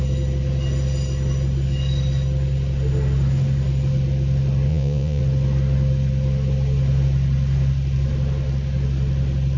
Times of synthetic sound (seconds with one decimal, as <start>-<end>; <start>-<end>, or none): 4.7-5.2